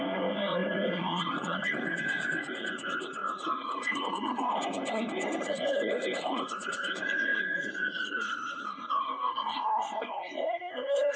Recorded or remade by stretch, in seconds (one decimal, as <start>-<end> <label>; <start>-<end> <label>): 0.0-11.2 remade